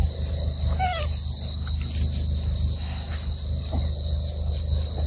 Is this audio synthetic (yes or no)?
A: no